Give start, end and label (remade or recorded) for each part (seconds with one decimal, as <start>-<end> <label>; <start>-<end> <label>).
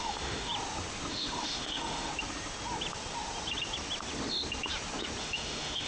0.0-0.5 remade; 0.5-1.1 recorded; 1.1-2.1 remade; 2.1-5.2 recorded; 5.2-5.9 remade